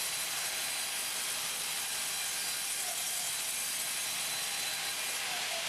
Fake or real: real